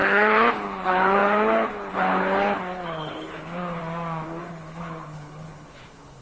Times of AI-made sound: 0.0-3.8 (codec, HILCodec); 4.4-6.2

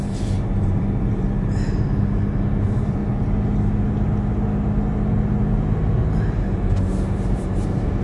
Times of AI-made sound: 0.0-3.0 (vocoder, BigVGAN v2); 6.8-8.0

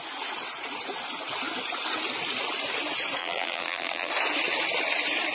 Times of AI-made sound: 3.2-4.1 (vocoder, BigVGAN v2)

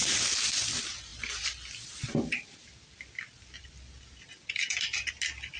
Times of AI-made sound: none